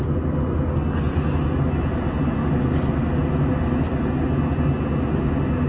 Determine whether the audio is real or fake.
real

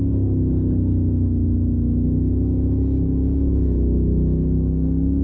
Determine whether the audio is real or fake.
real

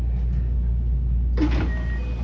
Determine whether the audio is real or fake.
real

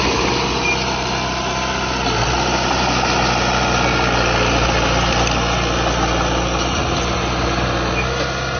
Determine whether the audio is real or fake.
real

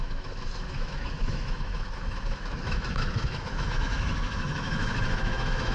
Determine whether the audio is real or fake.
fake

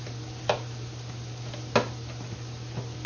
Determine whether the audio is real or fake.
real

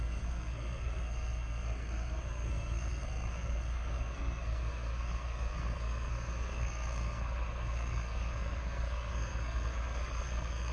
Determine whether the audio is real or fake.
fake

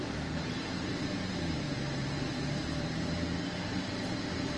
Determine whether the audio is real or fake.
fake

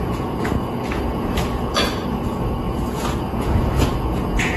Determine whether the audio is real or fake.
fake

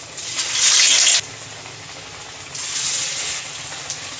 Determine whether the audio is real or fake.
real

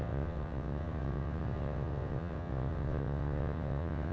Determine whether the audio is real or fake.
fake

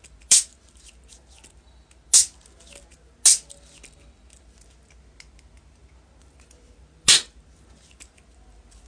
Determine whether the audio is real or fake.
real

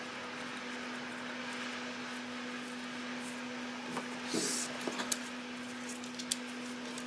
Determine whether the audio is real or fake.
real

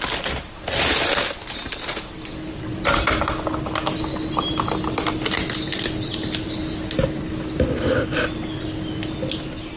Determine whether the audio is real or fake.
real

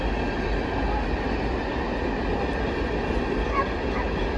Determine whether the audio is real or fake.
real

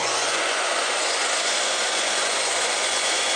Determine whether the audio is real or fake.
fake